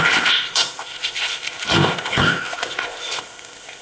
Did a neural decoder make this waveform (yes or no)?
yes